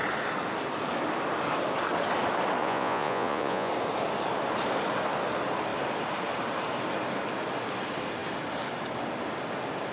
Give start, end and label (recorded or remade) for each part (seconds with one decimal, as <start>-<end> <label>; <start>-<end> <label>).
0.0-2.6 recorded; 2.6-3.7 remade; 3.7-9.9 recorded